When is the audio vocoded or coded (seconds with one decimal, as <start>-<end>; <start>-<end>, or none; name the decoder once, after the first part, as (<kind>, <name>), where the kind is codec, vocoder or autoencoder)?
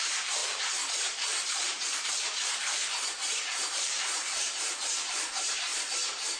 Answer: 0.0-0.4 (vocoder, BigVGAN v2); 0.9-2.8; 3.4-6.4